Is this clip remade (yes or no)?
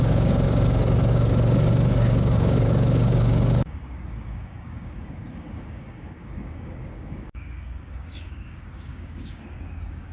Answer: yes